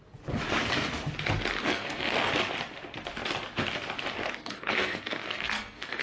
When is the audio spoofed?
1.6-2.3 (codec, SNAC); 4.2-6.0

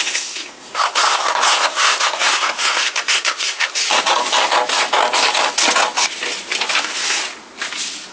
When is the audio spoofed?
0.0-3.8 (codec, SNAC); 6.8-7.2

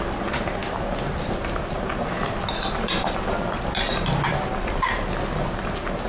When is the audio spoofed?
none

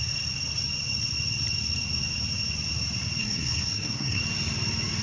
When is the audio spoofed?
3.2-4.2 (codec, SNAC)

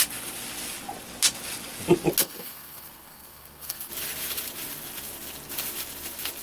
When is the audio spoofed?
2.2-3.9 (codec, SNAC)

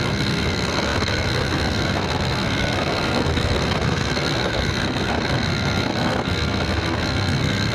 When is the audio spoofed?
0.0-7.7 (codec, SNAC)

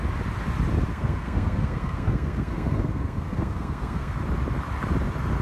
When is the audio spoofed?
0.9-4.1 (codec, SNAC)